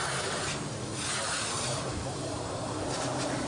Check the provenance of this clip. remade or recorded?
remade